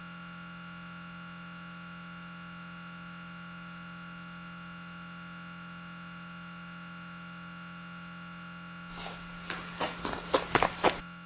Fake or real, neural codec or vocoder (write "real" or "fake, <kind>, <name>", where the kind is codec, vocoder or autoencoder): real